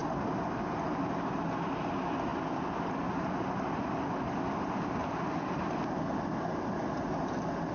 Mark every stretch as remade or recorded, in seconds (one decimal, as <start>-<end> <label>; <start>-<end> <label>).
0.0-7.7 recorded